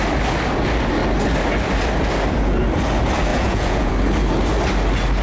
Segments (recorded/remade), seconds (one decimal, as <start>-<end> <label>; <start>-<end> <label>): 0.0-3.3 recorded; 3.3-3.9 remade; 3.9-5.2 recorded